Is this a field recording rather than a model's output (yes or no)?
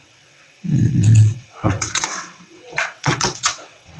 no